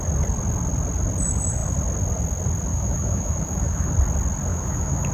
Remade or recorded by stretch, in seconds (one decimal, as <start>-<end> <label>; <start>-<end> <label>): 0.0-2.7 recorded; 2.7-3.9 remade; 3.9-4.5 recorded; 4.5-5.1 remade